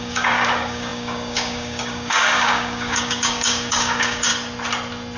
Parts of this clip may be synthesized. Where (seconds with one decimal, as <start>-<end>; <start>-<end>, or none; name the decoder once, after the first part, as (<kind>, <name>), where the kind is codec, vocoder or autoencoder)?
0.0-4.3 (codec, DAC)